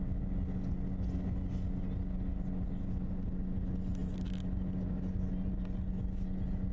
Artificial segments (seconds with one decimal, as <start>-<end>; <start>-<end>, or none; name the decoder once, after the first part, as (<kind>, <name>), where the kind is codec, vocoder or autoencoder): none